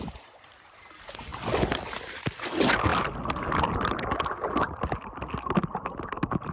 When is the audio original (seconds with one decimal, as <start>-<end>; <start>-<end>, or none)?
0.0-6.5

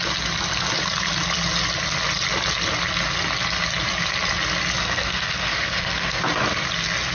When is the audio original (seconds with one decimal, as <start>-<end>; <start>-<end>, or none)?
0.0-4.8; 6.2-7.1

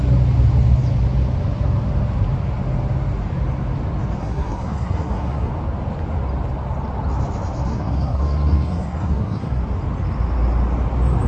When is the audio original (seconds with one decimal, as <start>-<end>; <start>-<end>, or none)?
0.0-4.2; 5.5-7.7; 9.6-11.3

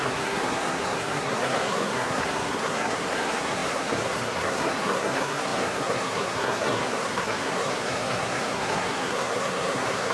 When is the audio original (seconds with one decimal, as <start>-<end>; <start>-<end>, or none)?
none

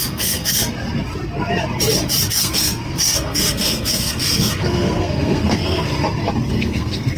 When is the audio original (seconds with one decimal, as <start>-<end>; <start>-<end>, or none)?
0.6-2.3; 5.9-6.5